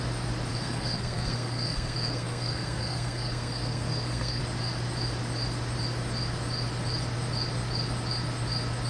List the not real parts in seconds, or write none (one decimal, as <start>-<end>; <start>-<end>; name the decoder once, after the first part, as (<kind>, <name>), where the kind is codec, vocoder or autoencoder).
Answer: 0.5-4.4 (codec, SNAC)